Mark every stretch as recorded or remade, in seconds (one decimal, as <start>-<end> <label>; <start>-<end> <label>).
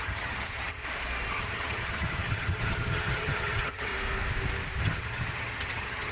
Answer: 0.0-0.8 remade; 0.8-1.3 recorded; 1.3-3.9 remade; 3.9-4.8 recorded; 4.8-6.1 remade